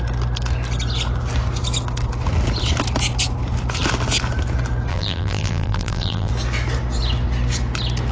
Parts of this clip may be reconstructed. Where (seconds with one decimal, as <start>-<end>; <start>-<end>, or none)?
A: 4.9-6.3

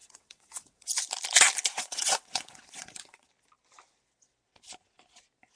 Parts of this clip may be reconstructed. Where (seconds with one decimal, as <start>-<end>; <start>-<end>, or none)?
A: 0.0-0.9; 1.7-3.3

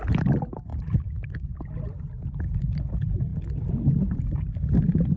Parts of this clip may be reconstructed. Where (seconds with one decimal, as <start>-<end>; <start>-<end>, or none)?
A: none

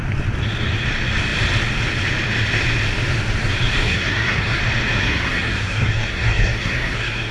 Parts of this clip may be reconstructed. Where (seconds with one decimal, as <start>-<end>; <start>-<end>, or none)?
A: 3.8-4.6; 5.0-7.3

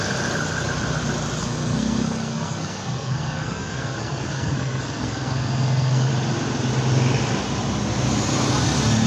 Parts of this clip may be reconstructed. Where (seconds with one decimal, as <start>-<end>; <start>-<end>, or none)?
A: 1.4-6.1

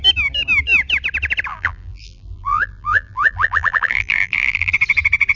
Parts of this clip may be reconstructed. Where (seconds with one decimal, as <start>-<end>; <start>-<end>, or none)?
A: 1.5-4.7

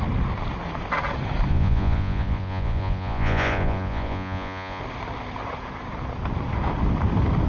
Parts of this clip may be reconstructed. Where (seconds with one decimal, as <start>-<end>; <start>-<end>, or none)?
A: 1.5-4.8